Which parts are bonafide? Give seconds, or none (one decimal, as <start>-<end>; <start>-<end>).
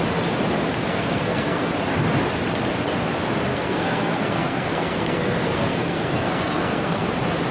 0.0-0.9; 1.7-3.5; 7.1-7.5